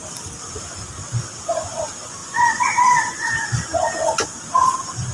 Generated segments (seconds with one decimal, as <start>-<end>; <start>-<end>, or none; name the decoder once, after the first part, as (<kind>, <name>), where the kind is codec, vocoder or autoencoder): 2.2-3.3 (vocoder, Vocos)

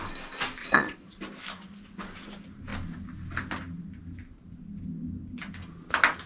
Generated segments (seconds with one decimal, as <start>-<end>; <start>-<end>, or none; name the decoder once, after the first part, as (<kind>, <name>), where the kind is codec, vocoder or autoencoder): 0.6-1.2 (vocoder, Vocos)

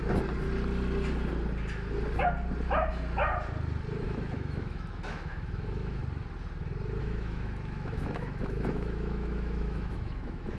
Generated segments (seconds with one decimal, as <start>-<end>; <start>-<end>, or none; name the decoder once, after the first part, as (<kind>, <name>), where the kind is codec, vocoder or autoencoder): 4.0-6.0 (autoencoder, DAC-VAE); 7.0-10.6

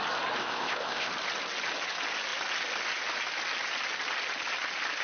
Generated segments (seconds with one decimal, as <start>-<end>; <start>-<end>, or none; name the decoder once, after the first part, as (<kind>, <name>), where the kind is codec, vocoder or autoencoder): 0.4-1.1 (codec, ZipCodec)

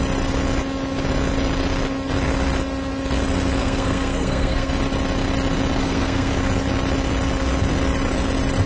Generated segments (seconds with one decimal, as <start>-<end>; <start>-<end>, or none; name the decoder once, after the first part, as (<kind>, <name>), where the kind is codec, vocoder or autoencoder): 3.6-4.7 (codec, SNAC); 5.8-6.3

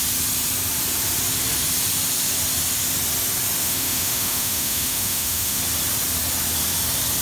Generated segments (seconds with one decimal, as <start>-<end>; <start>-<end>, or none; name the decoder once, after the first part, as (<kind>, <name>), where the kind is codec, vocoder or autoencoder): 3.6-5.6 (autoencoder, DAC-VAE)

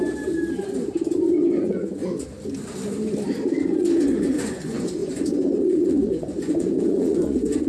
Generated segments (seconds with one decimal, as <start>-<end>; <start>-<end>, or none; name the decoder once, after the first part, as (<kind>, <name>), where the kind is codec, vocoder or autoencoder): 1.1-2.0 (vocoder, Vocos); 3.6-7.7

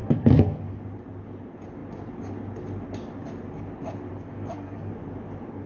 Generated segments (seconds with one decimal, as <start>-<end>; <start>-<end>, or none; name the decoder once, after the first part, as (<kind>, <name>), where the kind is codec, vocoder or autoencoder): 0.0-0.8 (codec, SNAC); 4.1-4.9